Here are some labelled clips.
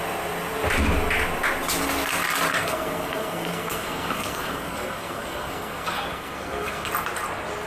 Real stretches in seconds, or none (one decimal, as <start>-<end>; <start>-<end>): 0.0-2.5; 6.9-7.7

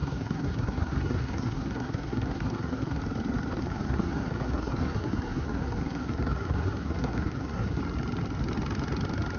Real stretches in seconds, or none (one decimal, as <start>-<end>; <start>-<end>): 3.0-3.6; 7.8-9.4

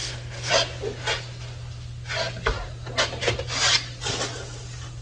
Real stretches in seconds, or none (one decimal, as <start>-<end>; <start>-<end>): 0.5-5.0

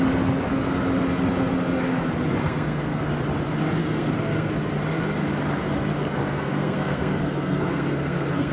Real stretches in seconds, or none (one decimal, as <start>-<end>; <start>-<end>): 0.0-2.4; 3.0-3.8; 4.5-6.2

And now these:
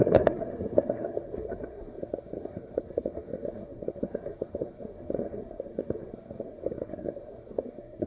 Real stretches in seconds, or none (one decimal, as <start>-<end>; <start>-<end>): none